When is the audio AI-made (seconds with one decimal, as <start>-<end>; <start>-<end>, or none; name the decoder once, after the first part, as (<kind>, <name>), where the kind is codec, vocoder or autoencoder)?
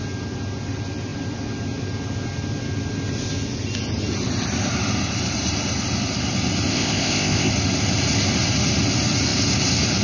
6.7-7.5 (codec, ZipCodec)